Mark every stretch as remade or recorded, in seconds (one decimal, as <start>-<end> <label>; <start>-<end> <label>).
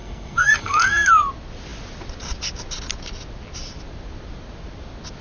0.0-1.1 remade; 1.1-5.2 recorded